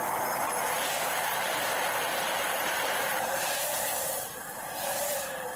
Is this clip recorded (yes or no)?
no